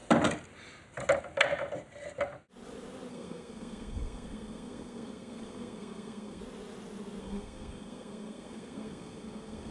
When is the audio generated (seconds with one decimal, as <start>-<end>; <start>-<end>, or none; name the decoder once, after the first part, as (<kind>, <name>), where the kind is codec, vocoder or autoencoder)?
3.1-6.4 (codec, SNAC); 7.2-9.7